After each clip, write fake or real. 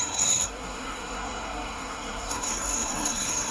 fake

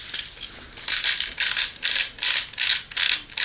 real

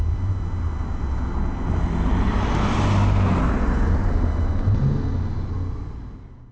real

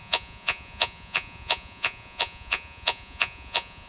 fake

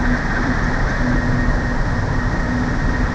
real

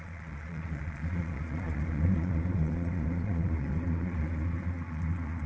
fake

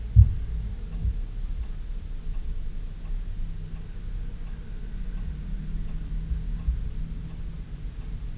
real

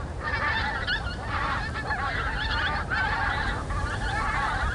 fake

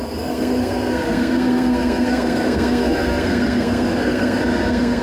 fake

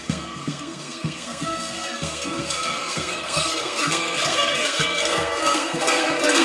fake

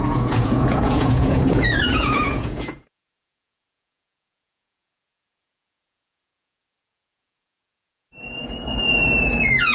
fake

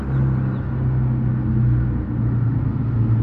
real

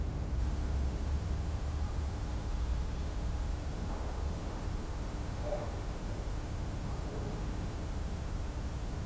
fake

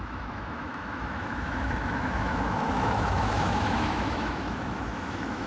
fake